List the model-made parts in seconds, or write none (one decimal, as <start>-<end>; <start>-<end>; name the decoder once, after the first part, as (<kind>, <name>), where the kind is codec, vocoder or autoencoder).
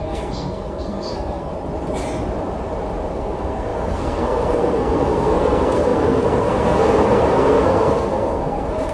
0.0-1.5 (codec, SNAC); 3.1-8.9